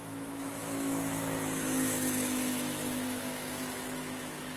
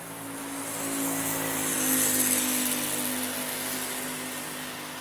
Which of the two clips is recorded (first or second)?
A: second